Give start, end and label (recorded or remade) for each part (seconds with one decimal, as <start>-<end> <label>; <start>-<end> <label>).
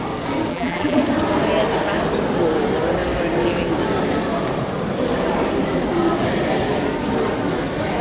0.0-0.5 recorded; 0.5-1.0 remade; 1.0-8.0 recorded